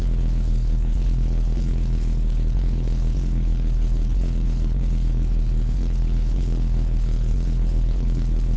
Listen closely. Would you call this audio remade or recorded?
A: remade